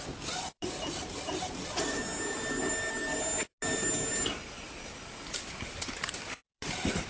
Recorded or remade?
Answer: recorded